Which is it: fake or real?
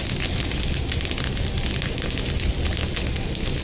real